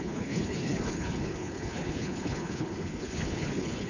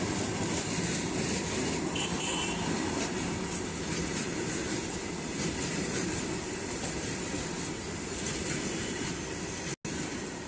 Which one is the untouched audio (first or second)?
second